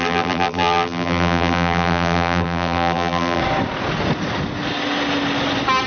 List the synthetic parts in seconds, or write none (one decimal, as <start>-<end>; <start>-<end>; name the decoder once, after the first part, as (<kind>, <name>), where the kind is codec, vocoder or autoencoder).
0.0-3.4 (vocoder, BigVGAN v2)